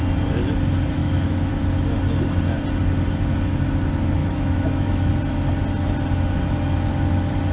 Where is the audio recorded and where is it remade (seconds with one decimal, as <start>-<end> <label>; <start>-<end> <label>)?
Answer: 0.0-1.0 recorded; 1.0-1.5 remade; 1.5-4.2 recorded; 4.2-5.1 remade; 5.1-7.5 recorded